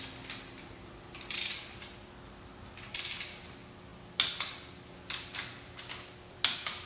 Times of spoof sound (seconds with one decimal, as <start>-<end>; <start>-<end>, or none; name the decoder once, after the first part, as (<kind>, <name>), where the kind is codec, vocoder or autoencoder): none